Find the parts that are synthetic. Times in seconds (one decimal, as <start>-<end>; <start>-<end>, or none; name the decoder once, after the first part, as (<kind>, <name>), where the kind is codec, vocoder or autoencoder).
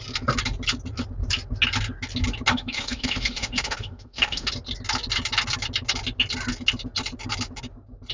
2.5-4.5 (autoencoder, DAC-VAE)